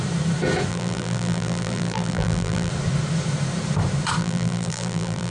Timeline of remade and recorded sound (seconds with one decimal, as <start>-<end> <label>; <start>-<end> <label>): 0.0-0.7 recorded; 0.7-2.7 remade; 2.7-4.2 recorded; 4.2-5.3 remade